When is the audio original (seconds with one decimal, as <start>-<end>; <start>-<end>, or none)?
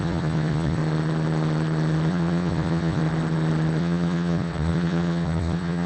0.8-2.1; 3.0-3.8